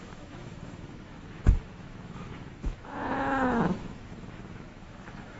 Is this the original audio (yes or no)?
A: no